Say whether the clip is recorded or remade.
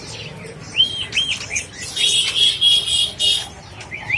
recorded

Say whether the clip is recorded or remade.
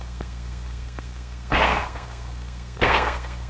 remade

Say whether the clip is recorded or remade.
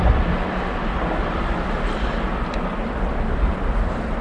recorded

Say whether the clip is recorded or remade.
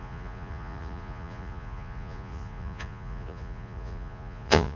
remade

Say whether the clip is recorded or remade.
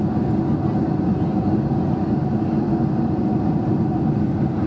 recorded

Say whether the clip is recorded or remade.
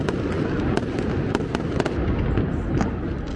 recorded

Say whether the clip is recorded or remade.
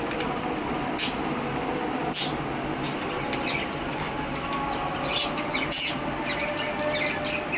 recorded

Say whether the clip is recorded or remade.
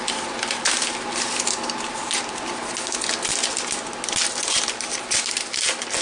recorded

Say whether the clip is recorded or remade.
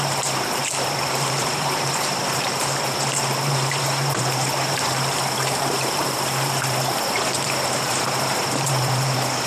remade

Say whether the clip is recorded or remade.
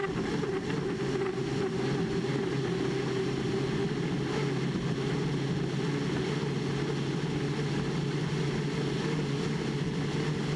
recorded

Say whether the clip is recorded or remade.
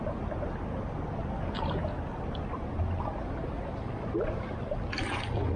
recorded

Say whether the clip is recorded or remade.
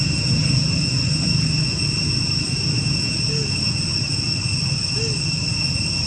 recorded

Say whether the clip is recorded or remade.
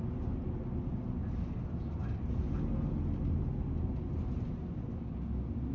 recorded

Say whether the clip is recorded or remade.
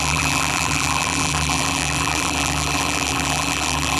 remade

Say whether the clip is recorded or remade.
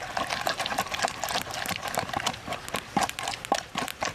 recorded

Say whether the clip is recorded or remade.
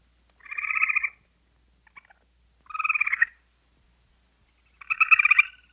recorded